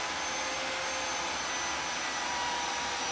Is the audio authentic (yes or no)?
yes